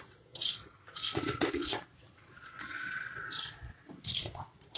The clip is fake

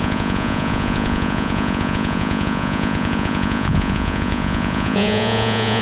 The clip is fake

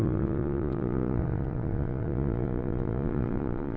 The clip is fake